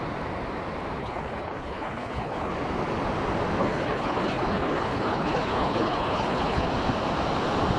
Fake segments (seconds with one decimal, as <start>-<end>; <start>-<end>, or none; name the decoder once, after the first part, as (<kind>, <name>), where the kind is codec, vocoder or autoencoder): 1.0-2.5 (codec, HILCodec); 3.6-6.7